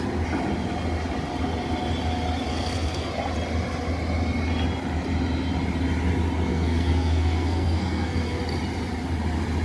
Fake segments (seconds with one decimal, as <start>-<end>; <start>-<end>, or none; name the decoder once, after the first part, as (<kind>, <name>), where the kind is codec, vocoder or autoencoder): 2.5-3.1 (codec, SNAC); 6.5-8.4